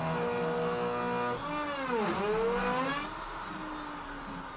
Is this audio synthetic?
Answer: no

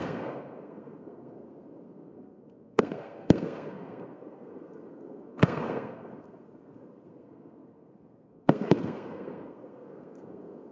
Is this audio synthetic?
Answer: yes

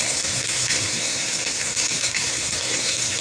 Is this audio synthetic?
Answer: yes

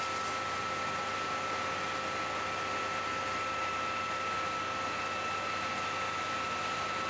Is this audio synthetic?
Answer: no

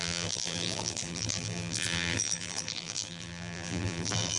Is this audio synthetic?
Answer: yes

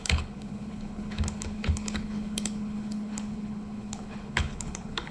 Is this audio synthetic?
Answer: yes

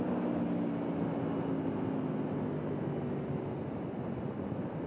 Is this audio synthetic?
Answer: no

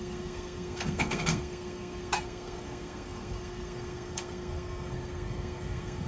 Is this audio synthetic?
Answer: yes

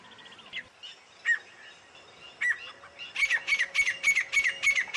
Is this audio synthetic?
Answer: no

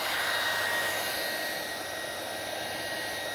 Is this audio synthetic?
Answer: no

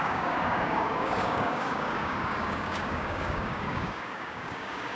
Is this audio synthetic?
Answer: yes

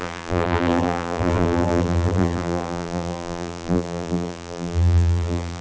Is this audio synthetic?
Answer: yes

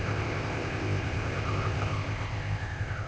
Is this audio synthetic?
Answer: yes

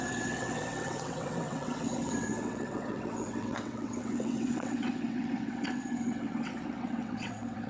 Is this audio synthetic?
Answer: yes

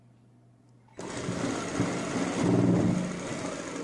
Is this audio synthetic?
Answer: no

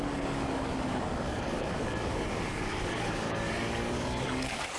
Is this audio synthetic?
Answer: yes